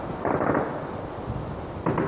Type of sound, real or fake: real